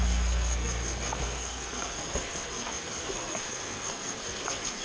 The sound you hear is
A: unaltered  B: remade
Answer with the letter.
B